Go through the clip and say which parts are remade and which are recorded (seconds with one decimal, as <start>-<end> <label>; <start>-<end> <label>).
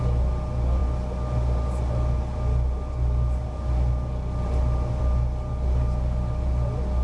0.0-7.0 recorded